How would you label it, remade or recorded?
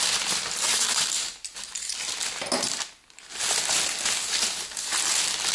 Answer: recorded